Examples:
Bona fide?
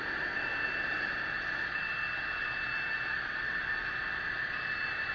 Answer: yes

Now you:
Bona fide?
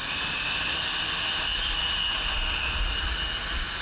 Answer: yes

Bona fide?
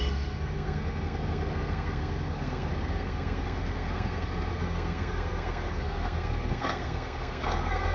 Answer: no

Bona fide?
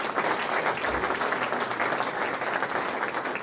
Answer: yes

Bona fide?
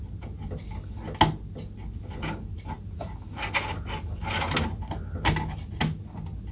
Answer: yes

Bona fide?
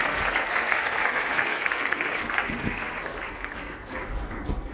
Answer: no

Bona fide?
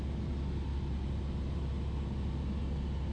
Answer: yes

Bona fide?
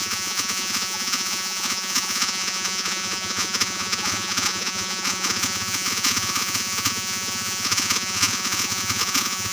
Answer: no